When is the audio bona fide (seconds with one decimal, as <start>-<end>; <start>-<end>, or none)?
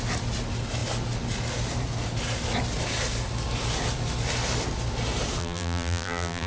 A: 0.0-5.4